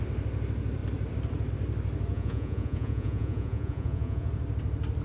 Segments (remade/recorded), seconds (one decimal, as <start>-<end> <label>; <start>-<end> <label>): 0.0-2.1 recorded; 2.1-4.3 remade; 4.3-5.0 recorded

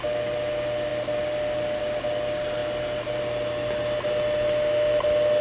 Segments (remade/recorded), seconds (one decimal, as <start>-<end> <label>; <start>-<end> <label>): 0.0-5.4 recorded

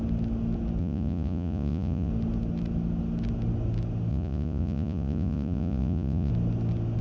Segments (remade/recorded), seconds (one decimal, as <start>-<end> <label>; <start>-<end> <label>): 0.0-0.8 recorded; 0.8-2.1 remade; 2.1-4.1 recorded; 4.1-6.3 remade; 6.3-7.0 recorded